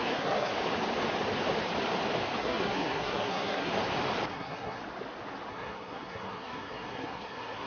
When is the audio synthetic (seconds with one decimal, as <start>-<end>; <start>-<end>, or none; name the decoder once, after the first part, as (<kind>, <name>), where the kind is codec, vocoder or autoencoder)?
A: 0.0-0.5 (codec, SNAC); 2.4-3.7; 4.3-4.8; 5.5-7.7